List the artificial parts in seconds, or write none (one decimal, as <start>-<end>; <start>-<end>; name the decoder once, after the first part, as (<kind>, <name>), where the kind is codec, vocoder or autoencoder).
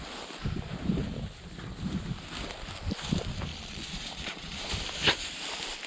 3.5-4.7 (vocoder, Vocos)